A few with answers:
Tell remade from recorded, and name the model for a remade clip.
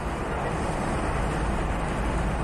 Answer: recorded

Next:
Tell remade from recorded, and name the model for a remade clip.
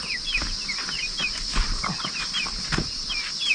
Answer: recorded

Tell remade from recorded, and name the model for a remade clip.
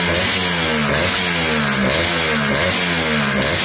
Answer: recorded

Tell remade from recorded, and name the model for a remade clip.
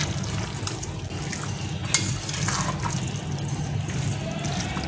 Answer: recorded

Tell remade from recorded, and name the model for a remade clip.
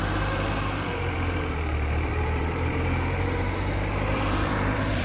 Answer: remade, vocoder, BigVGAN v2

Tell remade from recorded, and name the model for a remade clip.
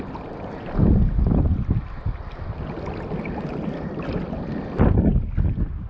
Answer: recorded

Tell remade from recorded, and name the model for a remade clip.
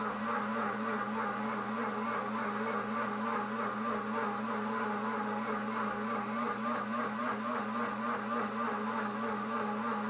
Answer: recorded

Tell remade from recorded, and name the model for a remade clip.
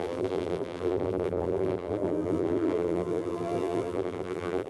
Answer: remade, vocoder, BigVGAN v2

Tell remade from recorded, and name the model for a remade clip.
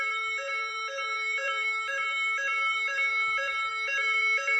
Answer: remade, vocoder, BigVGAN v2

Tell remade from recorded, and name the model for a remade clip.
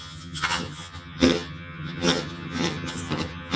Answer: remade, vocoder, HiFi-GAN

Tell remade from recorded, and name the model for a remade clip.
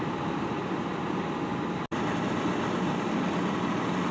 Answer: recorded